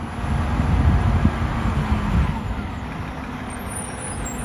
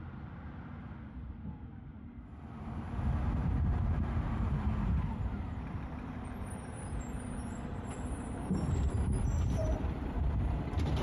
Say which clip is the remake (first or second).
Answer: second